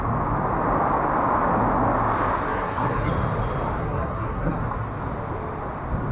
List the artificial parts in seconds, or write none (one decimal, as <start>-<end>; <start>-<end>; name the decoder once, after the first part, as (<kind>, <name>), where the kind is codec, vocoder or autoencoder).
2.5-3.1 (codec, SNAC); 3.8-4.6